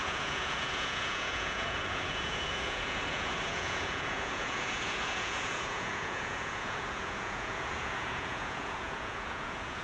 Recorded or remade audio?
remade